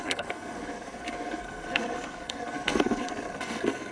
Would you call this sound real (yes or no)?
no